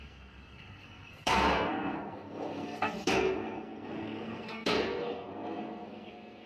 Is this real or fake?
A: fake